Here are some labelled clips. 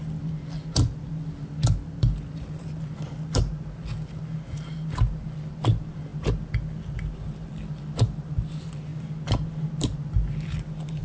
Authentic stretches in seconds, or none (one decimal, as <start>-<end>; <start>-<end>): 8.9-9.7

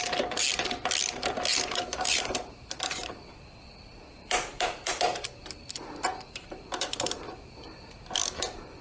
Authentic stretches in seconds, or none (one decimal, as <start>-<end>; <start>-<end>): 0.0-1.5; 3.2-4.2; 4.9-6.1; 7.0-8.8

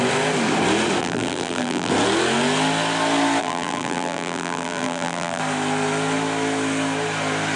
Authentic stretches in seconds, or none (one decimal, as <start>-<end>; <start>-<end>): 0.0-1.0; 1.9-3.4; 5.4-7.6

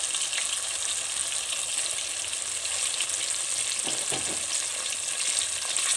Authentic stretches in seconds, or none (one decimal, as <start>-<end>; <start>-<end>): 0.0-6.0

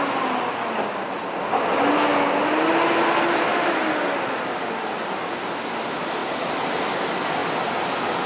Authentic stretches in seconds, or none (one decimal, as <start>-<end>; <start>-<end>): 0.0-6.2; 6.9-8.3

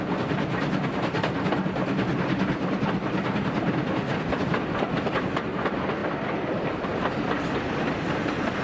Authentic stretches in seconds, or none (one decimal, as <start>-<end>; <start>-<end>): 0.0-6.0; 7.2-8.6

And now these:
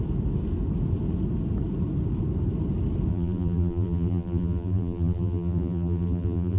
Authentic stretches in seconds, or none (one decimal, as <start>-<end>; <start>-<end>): 0.0-3.1

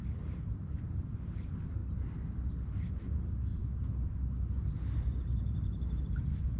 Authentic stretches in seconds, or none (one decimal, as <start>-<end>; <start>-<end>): 1.8-2.9; 3.5-5.2